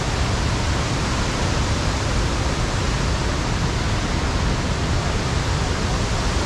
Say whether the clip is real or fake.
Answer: real